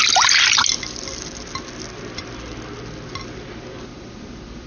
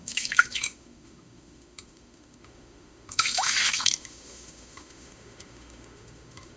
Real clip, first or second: first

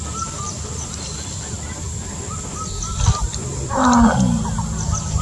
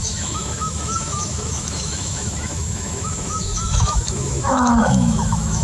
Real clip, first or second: first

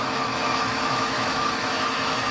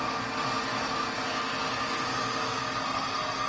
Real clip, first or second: second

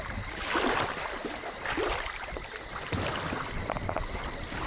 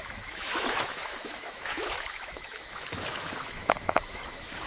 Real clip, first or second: first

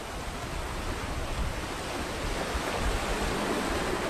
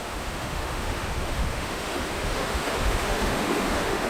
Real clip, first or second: first